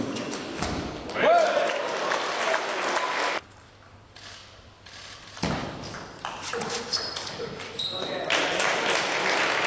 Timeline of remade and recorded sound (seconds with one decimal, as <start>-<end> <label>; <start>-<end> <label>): 0.0-9.7 remade